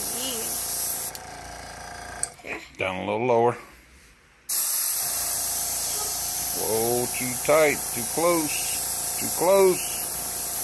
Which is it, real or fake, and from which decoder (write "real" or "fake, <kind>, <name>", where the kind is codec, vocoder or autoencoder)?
real